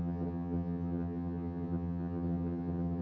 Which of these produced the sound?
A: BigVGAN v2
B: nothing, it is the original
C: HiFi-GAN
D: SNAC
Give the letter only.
C